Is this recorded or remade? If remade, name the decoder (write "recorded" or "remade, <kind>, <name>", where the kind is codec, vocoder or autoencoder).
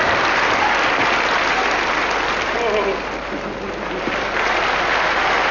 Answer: recorded